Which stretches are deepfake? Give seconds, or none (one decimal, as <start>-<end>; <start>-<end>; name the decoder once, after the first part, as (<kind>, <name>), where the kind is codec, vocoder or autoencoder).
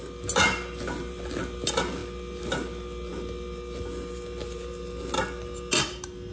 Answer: none